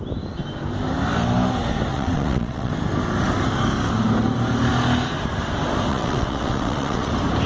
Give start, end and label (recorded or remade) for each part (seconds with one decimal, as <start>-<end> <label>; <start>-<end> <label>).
0.0-1.9 recorded; 1.9-2.7 remade; 2.7-5.9 recorded; 5.9-7.1 remade; 7.1-7.5 recorded